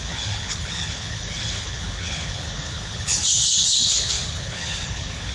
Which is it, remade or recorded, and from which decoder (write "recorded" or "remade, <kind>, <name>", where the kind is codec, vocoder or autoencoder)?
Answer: remade, codec, HILCodec